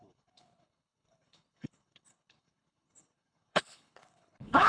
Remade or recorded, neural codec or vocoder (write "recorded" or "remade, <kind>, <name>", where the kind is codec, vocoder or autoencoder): remade, codec, HILCodec